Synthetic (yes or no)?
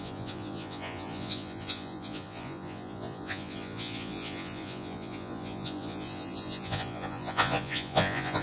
yes